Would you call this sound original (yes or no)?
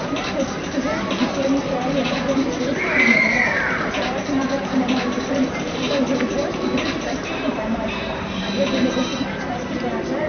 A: no